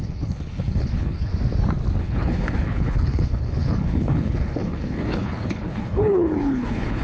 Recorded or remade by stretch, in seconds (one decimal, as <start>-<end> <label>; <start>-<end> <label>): 0.0-1.3 remade; 1.3-2.0 recorded; 2.0-7.0 remade